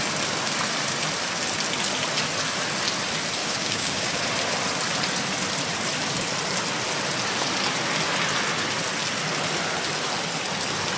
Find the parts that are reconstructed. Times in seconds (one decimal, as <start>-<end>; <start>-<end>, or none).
3.4-4.2